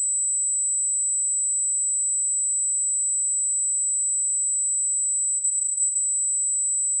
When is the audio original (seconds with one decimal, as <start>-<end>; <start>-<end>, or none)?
0.0-5.4; 6.0-7.0